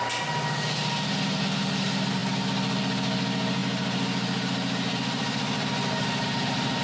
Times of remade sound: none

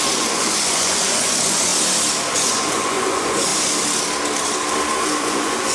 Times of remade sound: 0.0-1.7 (vocoder, Vocos); 2.3-3.5; 5.0-5.7

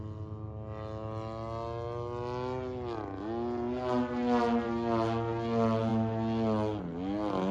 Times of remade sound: none

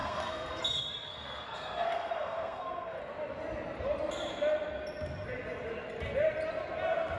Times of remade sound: 0.0-0.6 (codec, SNAC); 1.1-3.0

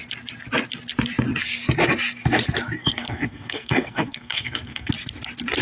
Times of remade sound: 2.8-4.9 (codec, SNAC)